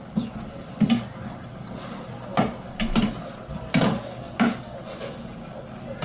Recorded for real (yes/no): yes